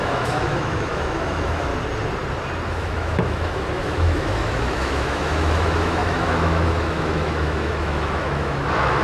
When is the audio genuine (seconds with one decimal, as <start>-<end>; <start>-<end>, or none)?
1.7-2.7